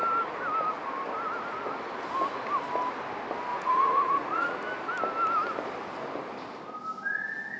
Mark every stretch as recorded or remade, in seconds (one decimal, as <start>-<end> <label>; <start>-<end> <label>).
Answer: 0.0-3.5 recorded; 3.5-4.6 remade; 4.6-7.6 recorded